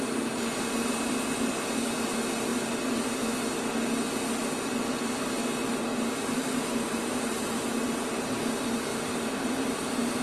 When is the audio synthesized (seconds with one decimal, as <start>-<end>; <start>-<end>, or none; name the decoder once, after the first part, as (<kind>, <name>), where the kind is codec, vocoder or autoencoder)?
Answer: 2.5-3.3 (vocoder, BigVGAN v2); 5.9-8.4; 8.9-10.2